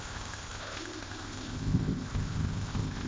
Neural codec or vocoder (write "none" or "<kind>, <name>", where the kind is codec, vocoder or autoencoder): codec, ZipCodec